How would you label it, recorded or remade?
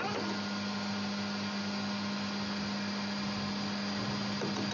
recorded